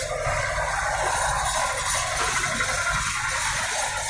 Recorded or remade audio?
recorded